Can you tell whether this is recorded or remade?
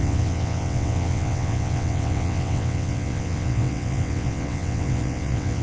remade